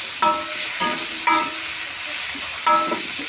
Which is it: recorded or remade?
recorded